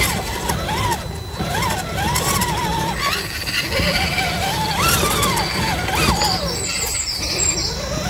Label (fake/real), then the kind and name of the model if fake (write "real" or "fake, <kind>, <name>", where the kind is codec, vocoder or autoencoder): real